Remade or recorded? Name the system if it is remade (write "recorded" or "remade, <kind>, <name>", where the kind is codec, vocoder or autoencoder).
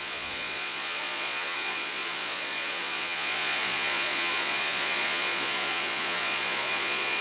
remade, vocoder, Vocos